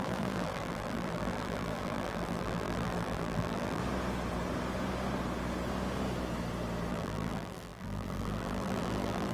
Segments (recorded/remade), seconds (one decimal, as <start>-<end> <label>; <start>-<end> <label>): 0.0-3.8 remade; 3.8-6.9 recorded; 6.9-9.3 remade